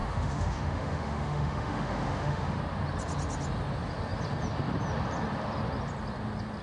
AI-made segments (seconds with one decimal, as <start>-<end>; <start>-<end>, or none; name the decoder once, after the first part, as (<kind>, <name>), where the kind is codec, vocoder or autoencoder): 0.0-2.6 (autoencoder, DAC-VAE)

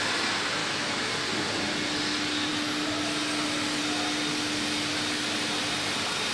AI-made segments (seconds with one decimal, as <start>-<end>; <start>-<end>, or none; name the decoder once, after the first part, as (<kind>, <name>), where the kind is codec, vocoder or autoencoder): 0.6-1.1 (autoencoder, DAC-VAE)